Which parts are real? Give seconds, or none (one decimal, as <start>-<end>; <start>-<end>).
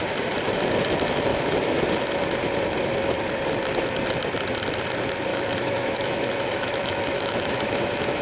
0.0-1.3; 1.8-5.3